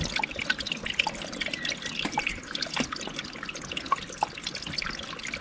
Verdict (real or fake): real